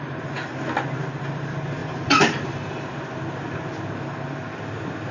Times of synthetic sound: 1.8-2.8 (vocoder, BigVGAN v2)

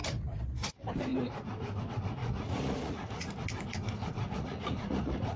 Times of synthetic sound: 2.2-3.3 (vocoder, Vocos); 4.0-5.4

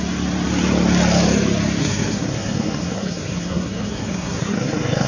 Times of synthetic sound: 1.8-5.1 (codec, SNAC)

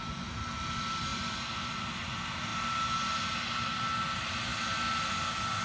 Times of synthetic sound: 1.1-1.7 (vocoder, BigVGAN v2)

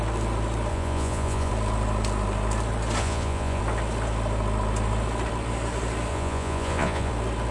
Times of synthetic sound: 0.7-1.5 (vocoder, Vocos); 3.0-3.6; 6.1-7.1

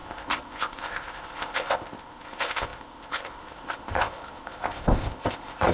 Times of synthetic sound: 0.0-5.7 (codec, ZipCodec)

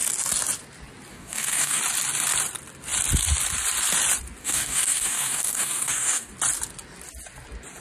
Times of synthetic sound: 1.1-1.8 (codec, DAC); 4.4-6.3

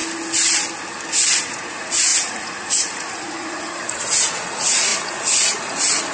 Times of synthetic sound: 1.4-6.1 (vocoder, Vocos)